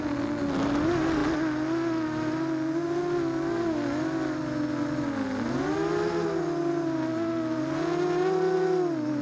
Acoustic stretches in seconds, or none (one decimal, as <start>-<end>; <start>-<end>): 0.0-9.2

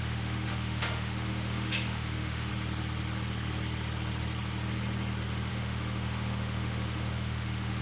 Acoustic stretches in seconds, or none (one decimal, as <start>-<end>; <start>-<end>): 2.5-5.5